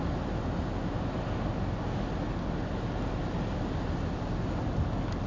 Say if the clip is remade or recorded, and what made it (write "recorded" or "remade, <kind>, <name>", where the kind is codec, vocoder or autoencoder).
recorded